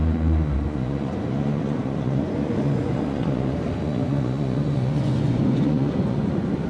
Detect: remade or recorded remade